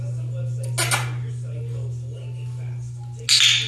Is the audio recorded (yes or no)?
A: yes